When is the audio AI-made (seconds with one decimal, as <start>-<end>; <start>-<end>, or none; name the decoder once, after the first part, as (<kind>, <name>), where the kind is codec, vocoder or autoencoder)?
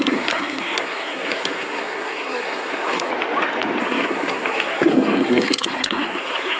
0.0-3.1 (codec, SNAC); 3.8-6.6